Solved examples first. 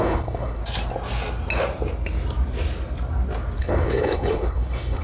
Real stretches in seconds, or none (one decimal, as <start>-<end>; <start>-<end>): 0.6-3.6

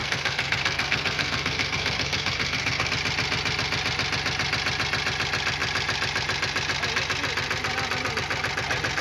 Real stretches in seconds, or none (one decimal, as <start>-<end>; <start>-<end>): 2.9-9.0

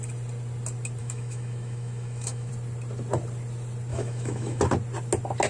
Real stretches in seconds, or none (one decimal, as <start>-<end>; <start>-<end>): 0.0-1.0; 2.5-3.9; 4.6-5.5